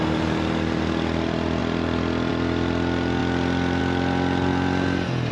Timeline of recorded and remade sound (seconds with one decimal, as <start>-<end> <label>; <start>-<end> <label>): 0.0-5.3 recorded